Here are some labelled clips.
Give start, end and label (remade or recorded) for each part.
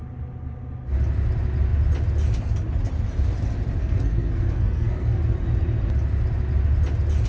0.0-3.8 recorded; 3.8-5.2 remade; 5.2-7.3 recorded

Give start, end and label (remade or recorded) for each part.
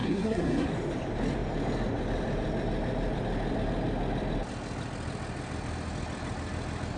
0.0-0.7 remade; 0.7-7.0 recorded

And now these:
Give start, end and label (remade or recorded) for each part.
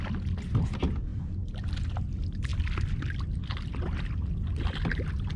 0.0-5.4 recorded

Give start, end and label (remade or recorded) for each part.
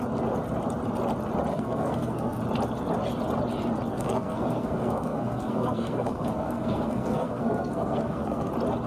0.0-1.5 recorded; 1.5-2.4 remade; 2.4-3.9 recorded; 3.9-8.5 remade; 8.5-8.9 recorded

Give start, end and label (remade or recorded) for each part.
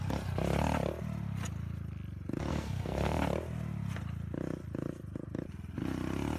0.0-2.5 recorded; 2.5-3.2 remade; 3.2-6.4 recorded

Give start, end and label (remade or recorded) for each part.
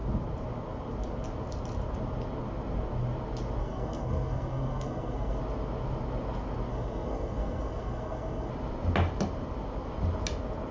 0.0-3.6 recorded; 3.6-5.4 remade; 5.4-6.7 recorded; 6.7-8.5 remade; 8.5-10.7 recorded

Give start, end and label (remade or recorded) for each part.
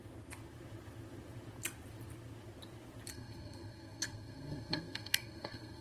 0.0-3.1 recorded; 3.1-5.8 remade